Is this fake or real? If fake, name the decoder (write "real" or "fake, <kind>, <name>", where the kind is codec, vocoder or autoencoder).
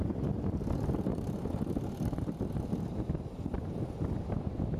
real